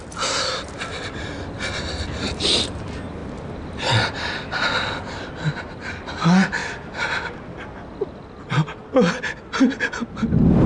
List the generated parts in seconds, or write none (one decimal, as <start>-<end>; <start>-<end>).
none